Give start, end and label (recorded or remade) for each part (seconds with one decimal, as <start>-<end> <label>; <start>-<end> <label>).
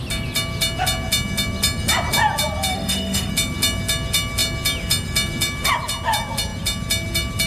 0.0-2.7 recorded; 2.7-3.3 remade; 3.3-7.5 recorded